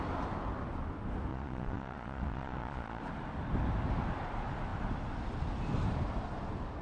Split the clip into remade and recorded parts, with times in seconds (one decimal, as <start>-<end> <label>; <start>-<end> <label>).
0.0-1.3 recorded; 1.3-3.0 remade; 3.0-6.8 recorded